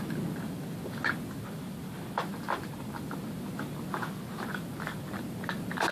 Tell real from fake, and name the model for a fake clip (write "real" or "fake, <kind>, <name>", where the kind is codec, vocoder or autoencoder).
real